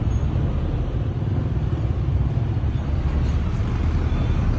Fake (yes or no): no